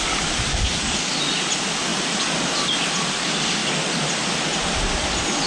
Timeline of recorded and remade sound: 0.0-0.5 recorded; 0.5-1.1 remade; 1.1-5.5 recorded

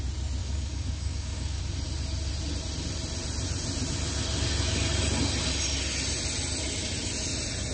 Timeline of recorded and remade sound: 0.0-0.4 recorded; 0.4-1.6 remade; 1.6-7.7 recorded

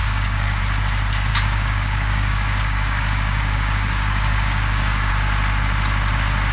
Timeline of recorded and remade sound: 0.0-0.6 remade; 0.6-1.3 recorded; 1.3-5.1 remade; 5.1-6.5 recorded

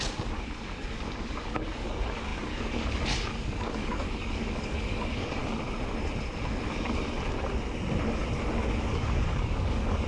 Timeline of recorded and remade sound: 0.0-5.4 remade; 5.4-8.8 recorded; 8.8-10.1 remade

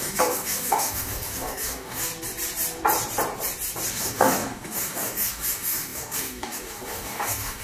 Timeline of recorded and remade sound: 0.0-2.1 remade; 2.1-3.9 recorded; 3.9-7.6 remade

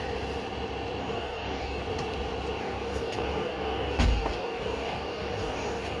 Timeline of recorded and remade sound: 0.0-1.0 recorded; 1.0-1.8 remade; 1.8-2.6 recorded; 2.6-6.0 remade

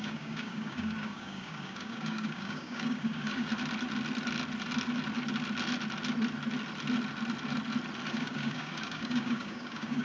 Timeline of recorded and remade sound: 0.0-3.5 remade; 3.5-8.1 recorded; 8.1-10.0 remade